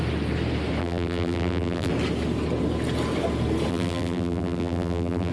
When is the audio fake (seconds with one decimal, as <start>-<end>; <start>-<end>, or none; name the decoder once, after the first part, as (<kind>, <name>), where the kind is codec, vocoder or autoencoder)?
0.8-1.9 (vocoder, BigVGAN v2); 3.7-5.3